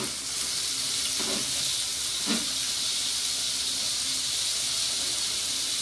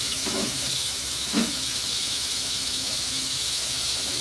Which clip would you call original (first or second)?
first